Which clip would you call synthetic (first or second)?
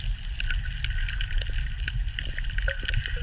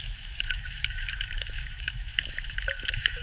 second